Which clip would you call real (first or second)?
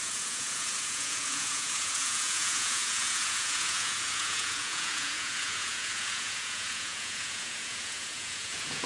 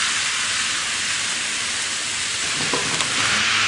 second